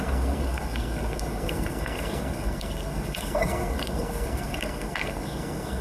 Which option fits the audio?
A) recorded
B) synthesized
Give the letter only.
B